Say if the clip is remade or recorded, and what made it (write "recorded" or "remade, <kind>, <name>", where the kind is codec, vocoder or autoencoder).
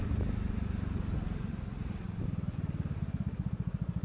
recorded